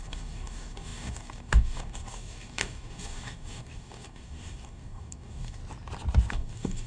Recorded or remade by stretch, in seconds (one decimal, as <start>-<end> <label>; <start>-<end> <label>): 0.0-5.6 remade; 5.6-6.3 recorded; 6.3-6.9 remade